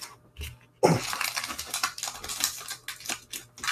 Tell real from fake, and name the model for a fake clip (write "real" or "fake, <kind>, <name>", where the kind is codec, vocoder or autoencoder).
real